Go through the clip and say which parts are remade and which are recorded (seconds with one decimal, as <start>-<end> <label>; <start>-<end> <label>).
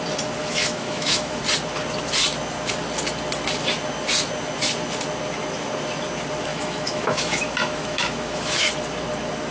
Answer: 0.0-0.4 recorded; 0.4-1.4 remade; 1.4-6.5 recorded; 6.5-8.7 remade; 8.7-9.5 recorded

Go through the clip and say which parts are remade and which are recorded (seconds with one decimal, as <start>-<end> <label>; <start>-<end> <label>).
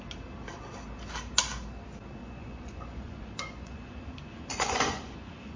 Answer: 0.0-2.2 recorded; 2.2-5.6 remade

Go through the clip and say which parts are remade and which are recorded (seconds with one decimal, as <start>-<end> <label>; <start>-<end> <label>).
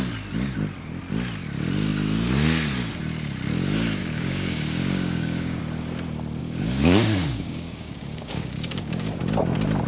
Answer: 0.0-4.0 recorded; 4.0-5.6 remade; 5.6-6.4 recorded; 6.4-9.2 remade; 9.2-9.9 recorded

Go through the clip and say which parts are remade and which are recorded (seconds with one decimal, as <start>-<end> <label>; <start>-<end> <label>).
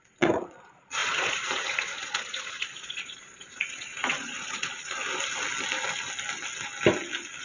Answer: 0.0-5.0 remade; 5.0-7.4 recorded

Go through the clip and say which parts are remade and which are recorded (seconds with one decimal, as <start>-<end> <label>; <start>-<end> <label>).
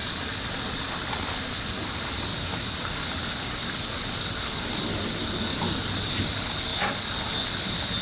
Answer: 0.0-0.7 remade; 0.7-2.3 recorded; 2.3-2.9 remade; 2.9-5.5 recorded; 5.5-6.2 remade; 6.2-6.7 recorded; 6.7-7.5 remade; 7.5-8.0 recorded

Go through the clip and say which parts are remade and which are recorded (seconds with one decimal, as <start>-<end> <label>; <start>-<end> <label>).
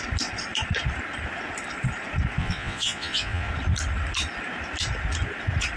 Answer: 0.0-2.4 recorded; 2.4-3.5 remade; 3.5-5.8 recorded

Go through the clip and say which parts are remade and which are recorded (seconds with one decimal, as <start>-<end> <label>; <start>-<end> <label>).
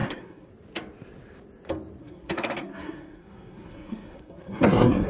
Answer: 0.0-0.5 remade; 0.5-2.0 recorded; 2.0-5.1 remade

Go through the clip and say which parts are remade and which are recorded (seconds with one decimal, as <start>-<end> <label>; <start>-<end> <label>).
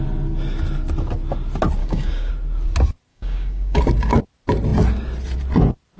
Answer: 0.0-1.8 recorded; 1.8-2.3 remade; 2.3-3.1 recorded; 3.1-3.8 remade; 3.8-6.0 recorded